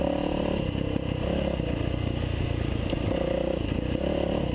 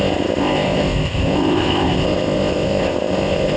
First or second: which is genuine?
first